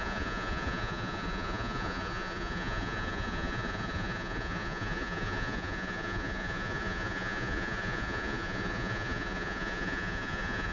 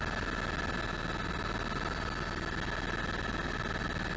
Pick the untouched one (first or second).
second